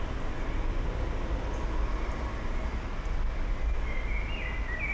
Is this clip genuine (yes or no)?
yes